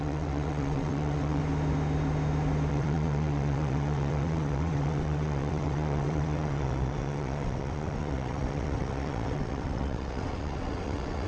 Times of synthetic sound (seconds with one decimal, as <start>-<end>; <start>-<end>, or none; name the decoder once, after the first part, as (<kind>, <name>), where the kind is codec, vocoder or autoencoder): 0.0-1.4 (vocoder, WaveNeXt); 2.7-11.3